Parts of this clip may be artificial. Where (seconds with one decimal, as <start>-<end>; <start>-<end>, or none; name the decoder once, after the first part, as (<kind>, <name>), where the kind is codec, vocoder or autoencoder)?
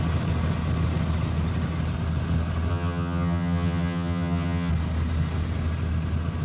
2.7-4.7 (vocoder, HiFi-GAN)